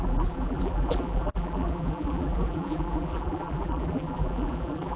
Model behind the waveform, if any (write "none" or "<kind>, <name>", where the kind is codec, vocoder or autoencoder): vocoder, BigVGAN v2